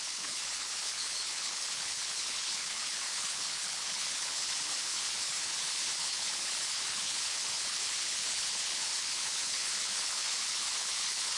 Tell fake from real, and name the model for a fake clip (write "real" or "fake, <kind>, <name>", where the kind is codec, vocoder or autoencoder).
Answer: fake, codec, HILCodec